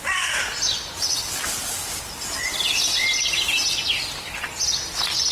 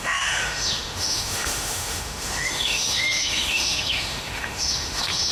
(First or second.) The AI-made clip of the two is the second